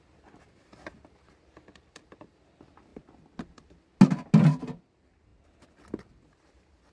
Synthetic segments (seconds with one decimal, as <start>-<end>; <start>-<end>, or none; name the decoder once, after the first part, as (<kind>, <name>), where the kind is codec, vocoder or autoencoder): 0.0-2.9 (vocoder, BigVGAN v2); 4.8-5.3; 6.0-6.9